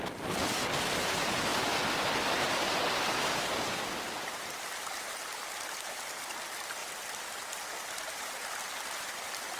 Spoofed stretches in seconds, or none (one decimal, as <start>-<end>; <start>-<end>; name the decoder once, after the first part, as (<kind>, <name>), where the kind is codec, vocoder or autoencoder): none

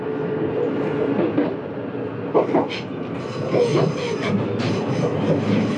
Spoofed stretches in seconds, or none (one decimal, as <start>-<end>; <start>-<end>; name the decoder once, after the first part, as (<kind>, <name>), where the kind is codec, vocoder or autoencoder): none